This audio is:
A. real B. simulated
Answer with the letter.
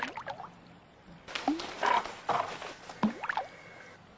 A